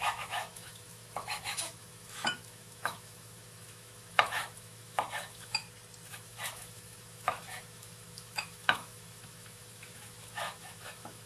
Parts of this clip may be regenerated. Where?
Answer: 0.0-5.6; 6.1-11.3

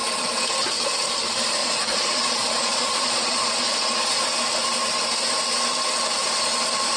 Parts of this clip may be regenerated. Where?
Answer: 1.6-4.1